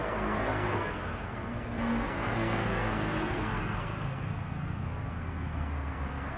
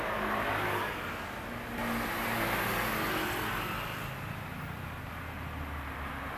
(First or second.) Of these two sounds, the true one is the second